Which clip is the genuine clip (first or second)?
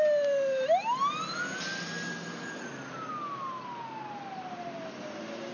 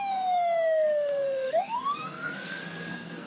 first